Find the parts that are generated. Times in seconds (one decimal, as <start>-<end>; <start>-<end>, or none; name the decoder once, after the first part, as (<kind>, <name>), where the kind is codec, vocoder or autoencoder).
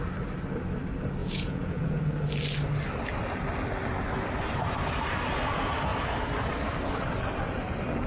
1.2-2.0 (vocoder, Vocos)